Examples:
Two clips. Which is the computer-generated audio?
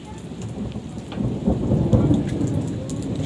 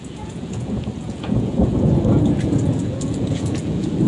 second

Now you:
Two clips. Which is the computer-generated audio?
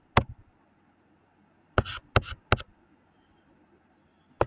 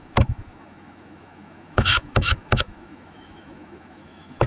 second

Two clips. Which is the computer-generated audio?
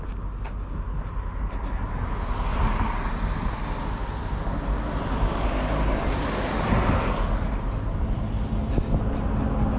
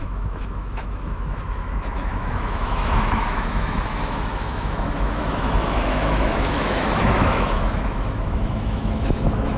second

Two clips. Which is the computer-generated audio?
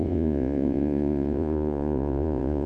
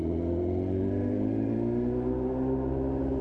first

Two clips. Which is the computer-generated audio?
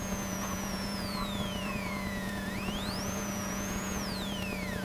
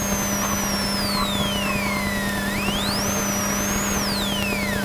first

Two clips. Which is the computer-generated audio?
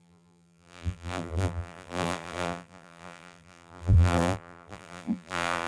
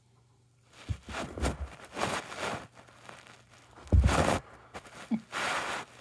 first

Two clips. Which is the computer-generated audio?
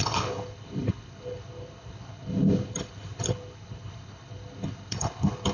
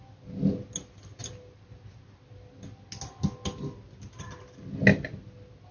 first